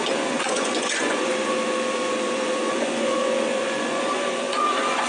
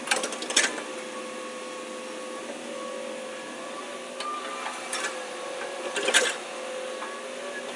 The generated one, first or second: first